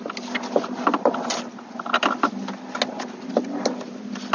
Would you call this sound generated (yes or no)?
no